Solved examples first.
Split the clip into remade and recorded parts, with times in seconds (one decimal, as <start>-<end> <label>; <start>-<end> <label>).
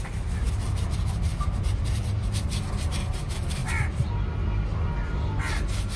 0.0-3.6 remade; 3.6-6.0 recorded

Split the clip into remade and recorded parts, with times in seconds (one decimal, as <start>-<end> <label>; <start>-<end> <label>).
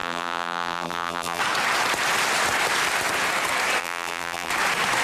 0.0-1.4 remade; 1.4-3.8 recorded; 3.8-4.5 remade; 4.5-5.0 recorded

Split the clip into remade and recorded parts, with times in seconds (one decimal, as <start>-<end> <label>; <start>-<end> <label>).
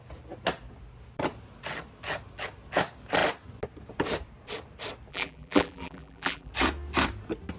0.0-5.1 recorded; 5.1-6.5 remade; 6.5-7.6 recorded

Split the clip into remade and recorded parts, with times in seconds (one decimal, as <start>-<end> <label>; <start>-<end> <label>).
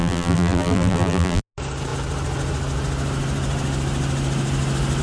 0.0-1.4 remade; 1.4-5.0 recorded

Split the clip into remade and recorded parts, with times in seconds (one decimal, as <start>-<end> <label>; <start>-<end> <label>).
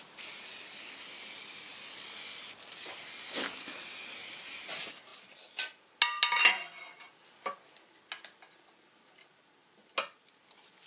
0.0-10.9 recorded